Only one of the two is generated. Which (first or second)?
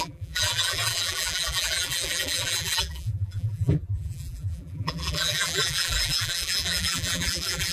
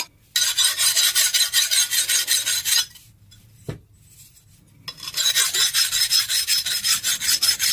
first